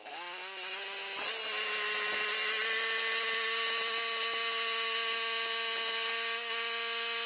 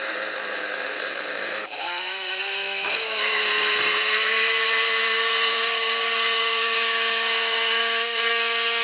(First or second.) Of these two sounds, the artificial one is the second